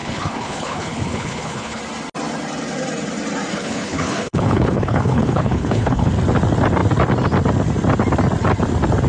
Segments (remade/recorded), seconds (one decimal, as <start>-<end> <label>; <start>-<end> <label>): 0.0-1.8 remade; 1.8-3.5 recorded; 3.5-6.1 remade; 6.1-9.1 recorded